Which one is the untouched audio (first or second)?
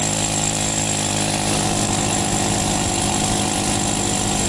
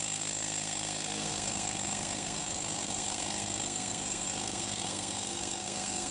first